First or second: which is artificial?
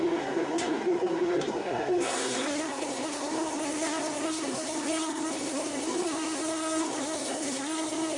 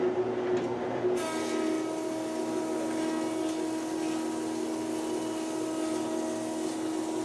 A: first